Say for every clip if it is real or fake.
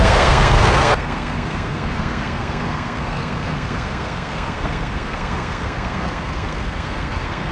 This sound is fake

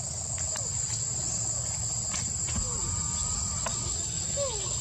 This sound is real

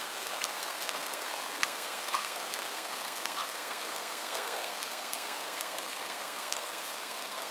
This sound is fake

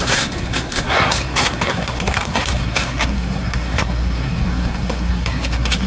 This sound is fake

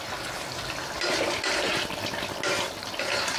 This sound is real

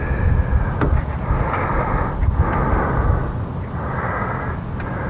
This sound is real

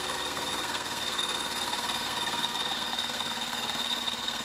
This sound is fake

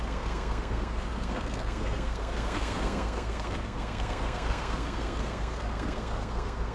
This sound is fake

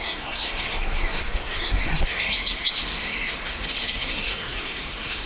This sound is fake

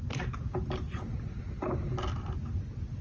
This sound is real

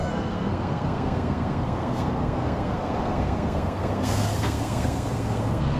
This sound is fake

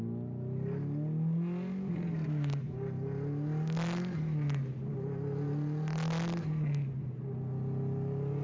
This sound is real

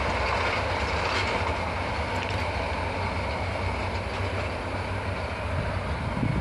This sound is real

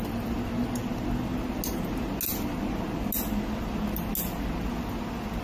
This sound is real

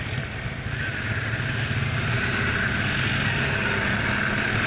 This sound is real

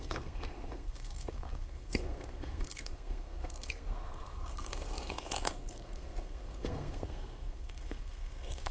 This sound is fake